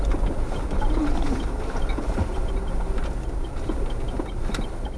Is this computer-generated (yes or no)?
no